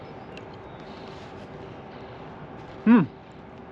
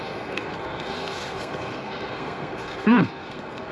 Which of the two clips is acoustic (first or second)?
first